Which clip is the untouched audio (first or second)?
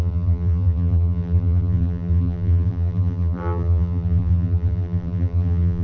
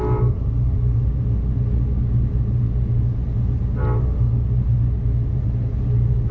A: second